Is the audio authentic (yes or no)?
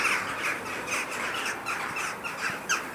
yes